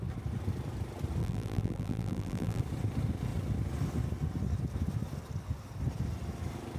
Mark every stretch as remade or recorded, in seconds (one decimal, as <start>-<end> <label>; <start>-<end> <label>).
0.0-1.2 recorded; 1.2-2.6 remade; 2.6-6.8 recorded